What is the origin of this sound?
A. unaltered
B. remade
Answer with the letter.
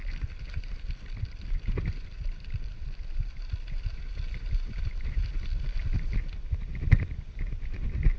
B